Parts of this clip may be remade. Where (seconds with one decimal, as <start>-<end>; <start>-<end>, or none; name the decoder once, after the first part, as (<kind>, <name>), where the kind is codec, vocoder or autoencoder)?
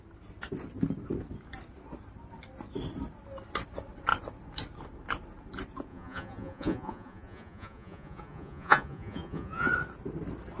5.9-9.7 (vocoder, Vocos)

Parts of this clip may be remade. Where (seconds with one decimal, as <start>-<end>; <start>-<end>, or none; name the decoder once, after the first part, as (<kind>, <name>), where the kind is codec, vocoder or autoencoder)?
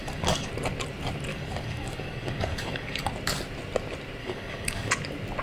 0.0-0.5 (codec, DAC); 1.3-3.1; 4.2-4.9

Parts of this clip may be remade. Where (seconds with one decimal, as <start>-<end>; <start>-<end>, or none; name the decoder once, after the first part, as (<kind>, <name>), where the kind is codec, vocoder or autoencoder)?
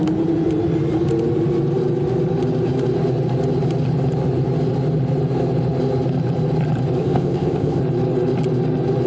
7.0-7.8 (codec, ZipCodec)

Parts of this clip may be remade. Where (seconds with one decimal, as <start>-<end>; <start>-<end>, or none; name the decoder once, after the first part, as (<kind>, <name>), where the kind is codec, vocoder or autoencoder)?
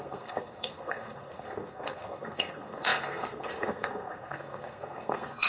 0.0-5.5 (codec, SNAC)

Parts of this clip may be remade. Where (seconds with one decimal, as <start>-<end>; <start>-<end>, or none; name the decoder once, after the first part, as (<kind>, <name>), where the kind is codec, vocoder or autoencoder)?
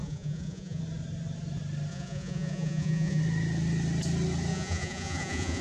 0.0-0.8 (vocoder, Vocos); 1.9-3.2; 4.5-5.6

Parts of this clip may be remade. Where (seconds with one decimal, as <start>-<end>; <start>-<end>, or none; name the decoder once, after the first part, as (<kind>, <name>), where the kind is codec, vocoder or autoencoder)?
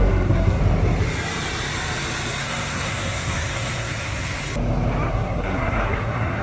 0.0-0.6 (codec, SNAC); 2.4-4.4; 5.1-6.4